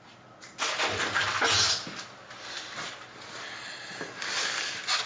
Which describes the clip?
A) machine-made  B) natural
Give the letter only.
B